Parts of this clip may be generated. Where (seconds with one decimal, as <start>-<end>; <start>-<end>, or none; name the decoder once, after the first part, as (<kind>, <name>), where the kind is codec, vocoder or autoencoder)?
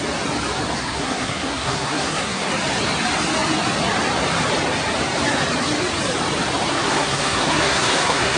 0.8-2.5 (codec, SNAC); 6.7-8.4